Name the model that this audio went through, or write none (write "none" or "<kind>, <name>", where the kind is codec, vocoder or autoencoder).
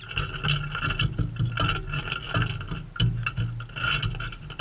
none